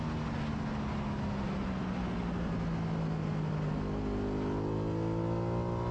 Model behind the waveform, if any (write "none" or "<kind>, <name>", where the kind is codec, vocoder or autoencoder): none